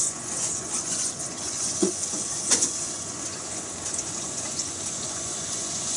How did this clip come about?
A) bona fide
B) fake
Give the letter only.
B